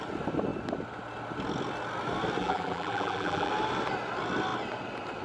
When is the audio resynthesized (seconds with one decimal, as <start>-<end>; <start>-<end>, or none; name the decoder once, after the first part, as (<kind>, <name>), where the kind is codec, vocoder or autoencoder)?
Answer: 2.4-3.5 (vocoder, BigVGAN v2)